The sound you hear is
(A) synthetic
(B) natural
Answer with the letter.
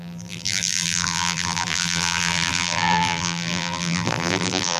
A